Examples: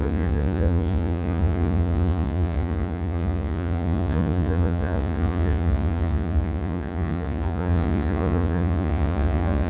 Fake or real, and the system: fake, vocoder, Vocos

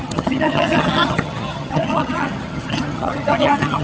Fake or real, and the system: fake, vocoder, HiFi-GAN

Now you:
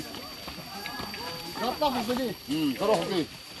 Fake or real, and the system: real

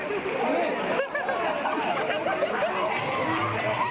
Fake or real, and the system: real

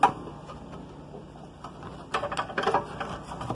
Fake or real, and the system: real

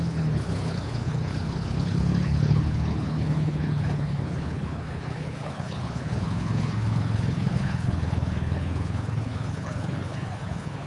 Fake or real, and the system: fake, codec, HILCodec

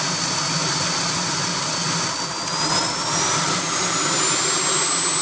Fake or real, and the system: real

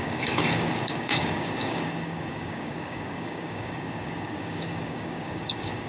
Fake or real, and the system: fake, codec, DAC